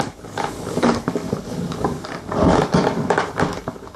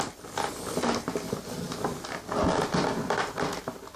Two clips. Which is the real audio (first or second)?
second